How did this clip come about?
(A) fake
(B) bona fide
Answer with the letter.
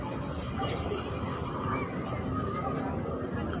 B